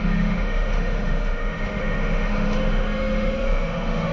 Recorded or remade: remade